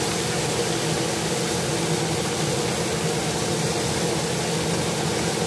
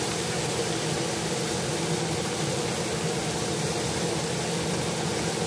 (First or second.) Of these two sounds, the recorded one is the first